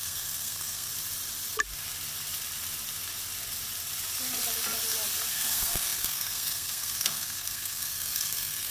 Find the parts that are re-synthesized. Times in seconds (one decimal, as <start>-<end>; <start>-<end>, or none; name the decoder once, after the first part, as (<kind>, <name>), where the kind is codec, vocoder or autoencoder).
0.0-0.9 (codec, SNAC); 5.3-8.7